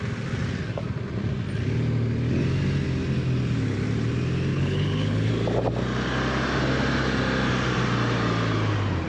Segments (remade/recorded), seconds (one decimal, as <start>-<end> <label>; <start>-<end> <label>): 0.0-4.5 recorded; 4.5-5.3 remade; 5.3-9.1 recorded